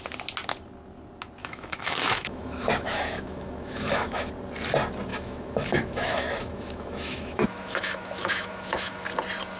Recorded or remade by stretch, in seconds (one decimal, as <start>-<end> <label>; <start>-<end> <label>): 0.0-1.4 recorded; 1.4-4.3 remade; 4.3-5.1 recorded; 5.1-9.1 remade; 9.1-9.6 recorded